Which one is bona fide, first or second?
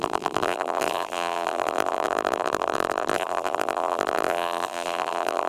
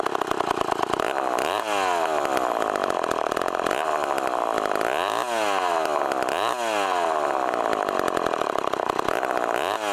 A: second